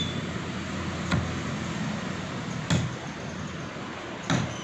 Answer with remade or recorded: recorded